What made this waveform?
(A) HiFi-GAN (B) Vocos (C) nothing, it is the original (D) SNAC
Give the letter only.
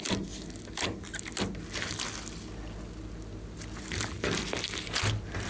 C